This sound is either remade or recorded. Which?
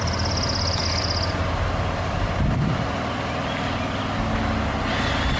recorded